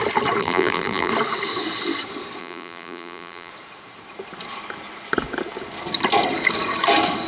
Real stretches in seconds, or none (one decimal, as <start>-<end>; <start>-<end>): 0.0-0.4; 1.1-2.4; 3.5-7.3